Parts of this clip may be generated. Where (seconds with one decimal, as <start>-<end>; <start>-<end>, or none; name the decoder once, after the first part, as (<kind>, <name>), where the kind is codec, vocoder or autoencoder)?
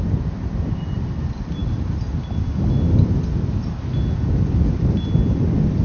none